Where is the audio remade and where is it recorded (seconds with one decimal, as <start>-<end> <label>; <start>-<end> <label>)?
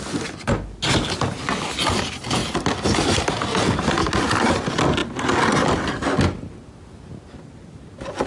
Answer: 0.0-8.3 recorded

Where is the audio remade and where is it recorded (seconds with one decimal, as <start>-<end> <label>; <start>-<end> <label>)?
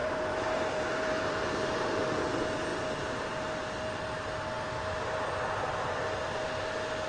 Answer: 0.0-2.0 remade; 2.0-2.7 recorded; 2.7-3.3 remade; 3.3-7.1 recorded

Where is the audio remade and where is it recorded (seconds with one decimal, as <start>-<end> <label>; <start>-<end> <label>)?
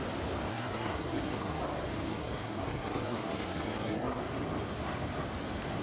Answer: 0.0-0.5 recorded; 0.5-1.6 remade; 1.6-2.1 recorded; 2.1-4.2 remade; 4.2-5.8 recorded